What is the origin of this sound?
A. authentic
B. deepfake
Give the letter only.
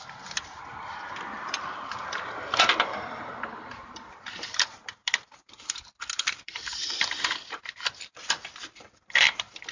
B